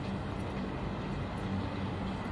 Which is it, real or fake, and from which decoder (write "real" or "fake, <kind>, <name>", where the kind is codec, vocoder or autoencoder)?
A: real